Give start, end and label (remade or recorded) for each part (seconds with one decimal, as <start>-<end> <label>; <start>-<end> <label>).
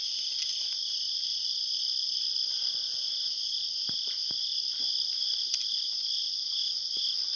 0.0-7.4 recorded